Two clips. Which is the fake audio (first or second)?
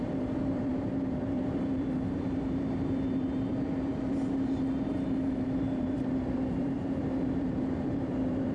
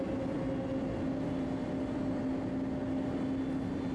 first